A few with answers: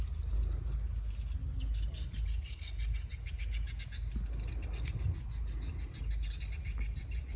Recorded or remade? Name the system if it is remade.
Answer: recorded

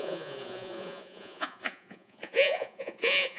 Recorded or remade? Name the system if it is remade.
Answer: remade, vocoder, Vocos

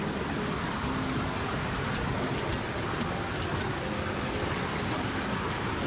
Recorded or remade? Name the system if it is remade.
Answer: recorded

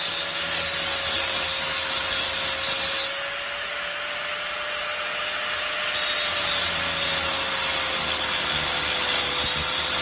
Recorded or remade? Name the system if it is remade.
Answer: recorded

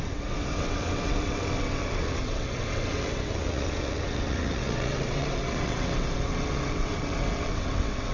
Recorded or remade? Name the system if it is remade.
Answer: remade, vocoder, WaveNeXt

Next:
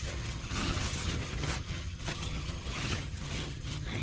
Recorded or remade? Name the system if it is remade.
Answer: remade, vocoder, HiFi-GAN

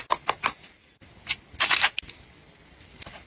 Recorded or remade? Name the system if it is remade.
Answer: recorded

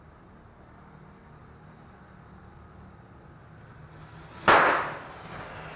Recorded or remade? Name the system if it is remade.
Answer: recorded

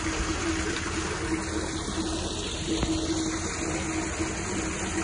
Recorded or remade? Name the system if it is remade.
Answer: recorded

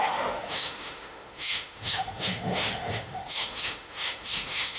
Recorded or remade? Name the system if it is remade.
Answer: remade, autoencoder, DAC-VAE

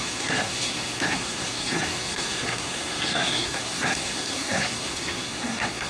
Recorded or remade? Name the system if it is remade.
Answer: remade, codec, SNAC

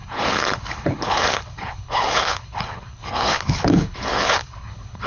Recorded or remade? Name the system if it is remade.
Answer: remade, codec, HILCodec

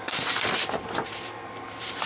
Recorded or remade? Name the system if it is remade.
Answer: remade, vocoder, BigVGAN v2